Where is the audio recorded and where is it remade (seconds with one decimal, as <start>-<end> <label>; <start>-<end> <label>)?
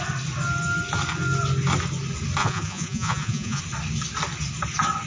0.0-2.4 recorded; 2.4-3.6 remade; 3.6-5.1 recorded